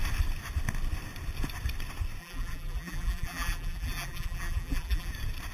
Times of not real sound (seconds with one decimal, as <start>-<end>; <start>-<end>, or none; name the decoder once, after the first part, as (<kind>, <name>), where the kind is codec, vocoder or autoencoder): 2.2-5.1 (vocoder, BigVGAN v2)